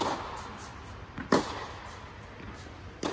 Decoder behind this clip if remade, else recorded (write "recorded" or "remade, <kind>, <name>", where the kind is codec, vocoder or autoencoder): recorded